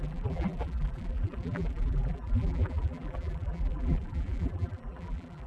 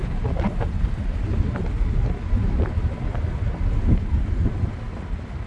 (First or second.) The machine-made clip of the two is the first